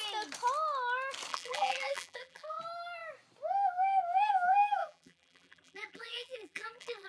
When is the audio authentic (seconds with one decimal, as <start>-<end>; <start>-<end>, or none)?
0.0-1.3; 2.6-4.8